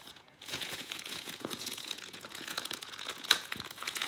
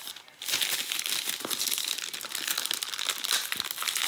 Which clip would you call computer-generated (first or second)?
first